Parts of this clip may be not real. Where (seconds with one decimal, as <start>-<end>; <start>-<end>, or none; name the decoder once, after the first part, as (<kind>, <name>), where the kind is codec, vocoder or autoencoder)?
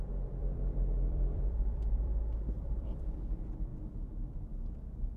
0.4-3.2 (vocoder, BigVGAN v2)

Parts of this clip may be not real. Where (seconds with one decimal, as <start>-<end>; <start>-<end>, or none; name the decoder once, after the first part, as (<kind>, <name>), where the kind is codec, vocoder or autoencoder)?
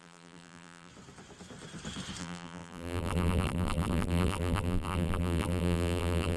0.0-0.9 (vocoder, BigVGAN v2); 2.2-6.4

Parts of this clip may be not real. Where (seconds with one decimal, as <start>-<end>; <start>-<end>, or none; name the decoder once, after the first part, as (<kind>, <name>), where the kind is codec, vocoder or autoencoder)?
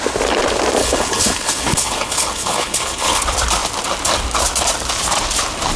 0.8-3.2 (codec, HILCodec)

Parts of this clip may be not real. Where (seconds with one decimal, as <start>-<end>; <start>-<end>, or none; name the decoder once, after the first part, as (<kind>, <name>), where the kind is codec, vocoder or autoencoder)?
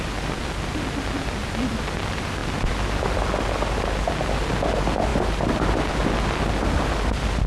none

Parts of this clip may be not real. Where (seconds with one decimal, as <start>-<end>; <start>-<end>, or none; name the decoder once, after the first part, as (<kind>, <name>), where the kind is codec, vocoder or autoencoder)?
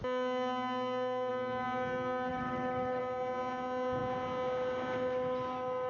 2.3-3.0 (autoencoder, DAC-VAE)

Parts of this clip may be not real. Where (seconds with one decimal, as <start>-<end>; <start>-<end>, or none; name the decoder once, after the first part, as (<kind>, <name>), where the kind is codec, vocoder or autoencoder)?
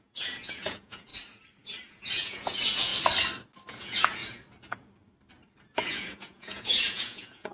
0.0-1.1 (vocoder, Vocos); 1.9-2.9; 3.7-4.2; 5.8-7.5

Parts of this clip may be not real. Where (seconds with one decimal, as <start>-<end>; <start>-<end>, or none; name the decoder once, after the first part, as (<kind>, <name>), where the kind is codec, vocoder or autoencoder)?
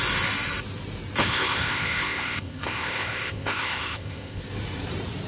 1.2-4.4 (codec, ZipCodec)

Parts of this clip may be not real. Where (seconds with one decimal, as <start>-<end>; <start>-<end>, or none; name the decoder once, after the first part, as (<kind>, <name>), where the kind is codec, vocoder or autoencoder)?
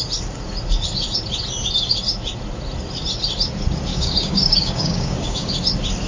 3.9-5.5 (codec, DAC)